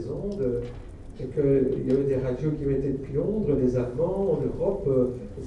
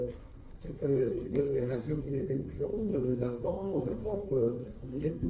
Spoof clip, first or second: second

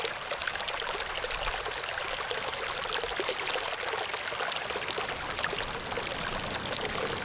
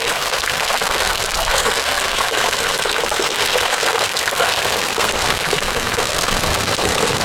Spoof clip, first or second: second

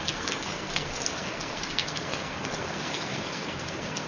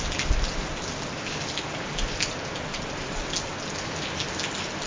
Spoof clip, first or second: first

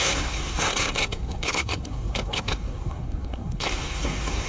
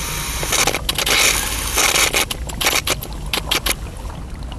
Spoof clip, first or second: first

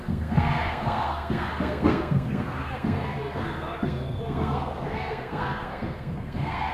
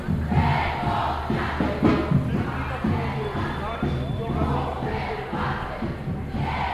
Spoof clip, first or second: first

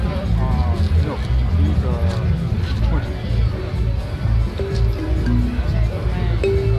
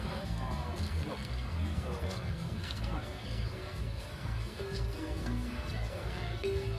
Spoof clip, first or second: second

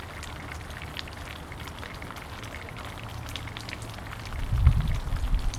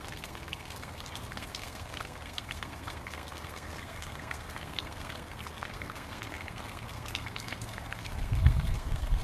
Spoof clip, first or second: second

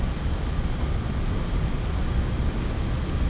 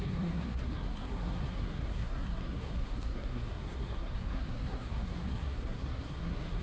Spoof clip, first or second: second